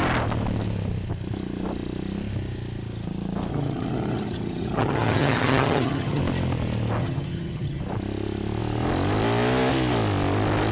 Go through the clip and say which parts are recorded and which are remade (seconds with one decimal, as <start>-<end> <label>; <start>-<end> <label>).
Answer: 0.0-3.5 recorded; 3.5-6.2 remade; 6.2-7.0 recorded; 7.0-7.8 remade; 7.8-10.7 recorded